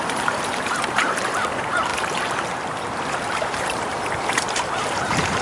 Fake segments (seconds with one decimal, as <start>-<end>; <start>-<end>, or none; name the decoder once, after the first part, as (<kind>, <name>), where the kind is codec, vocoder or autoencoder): 0.0-1.9 (vocoder, BigVGAN v2); 3.3-5.4